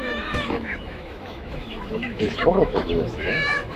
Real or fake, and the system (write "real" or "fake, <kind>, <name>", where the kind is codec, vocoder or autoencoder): fake, autoencoder, DAC-VAE